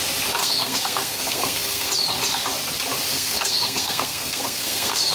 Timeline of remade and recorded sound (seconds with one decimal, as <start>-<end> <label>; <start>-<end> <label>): 0.0-0.4 recorded; 0.4-1.9 remade; 1.9-3.1 recorded; 3.1-5.1 remade